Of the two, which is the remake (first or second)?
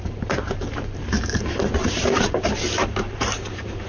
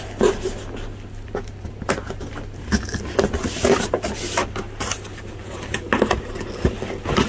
first